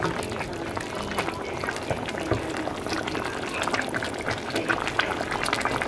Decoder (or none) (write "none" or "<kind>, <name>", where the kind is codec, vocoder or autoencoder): none